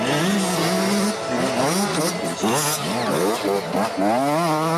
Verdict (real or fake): real